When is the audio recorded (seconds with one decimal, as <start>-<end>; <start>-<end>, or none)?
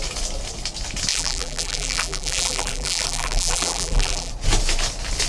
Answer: 0.0-1.1; 4.3-5.3